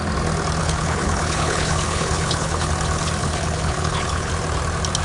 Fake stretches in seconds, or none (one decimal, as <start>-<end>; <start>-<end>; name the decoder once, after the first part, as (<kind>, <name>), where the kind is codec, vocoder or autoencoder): 0.6-2.7 (codec, HILCodec); 3.2-4.3